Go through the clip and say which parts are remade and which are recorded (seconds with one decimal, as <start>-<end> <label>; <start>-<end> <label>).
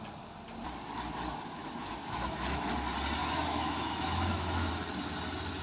0.0-1.6 recorded; 1.6-2.7 remade; 2.7-3.2 recorded; 3.2-4.7 remade; 4.7-5.6 recorded